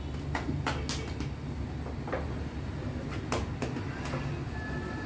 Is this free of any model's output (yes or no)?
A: yes